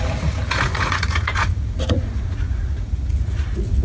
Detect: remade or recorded remade